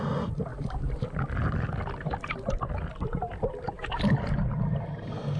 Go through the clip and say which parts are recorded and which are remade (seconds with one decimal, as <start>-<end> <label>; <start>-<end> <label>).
0.0-0.5 recorded; 0.5-1.2 remade; 1.2-5.4 recorded